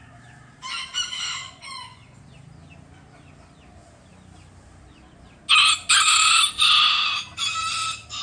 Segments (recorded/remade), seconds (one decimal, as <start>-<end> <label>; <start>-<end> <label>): 0.0-1.4 recorded; 1.4-2.2 remade; 2.2-8.2 recorded